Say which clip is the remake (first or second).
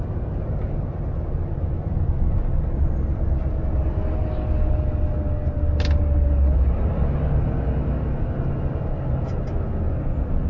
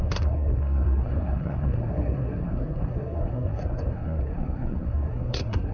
second